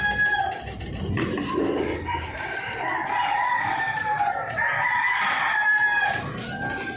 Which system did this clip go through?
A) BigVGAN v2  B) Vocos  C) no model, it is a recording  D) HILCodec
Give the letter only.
A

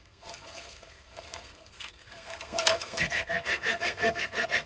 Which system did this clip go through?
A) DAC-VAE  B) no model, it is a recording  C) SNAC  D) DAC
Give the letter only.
C